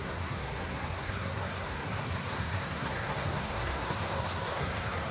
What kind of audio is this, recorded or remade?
remade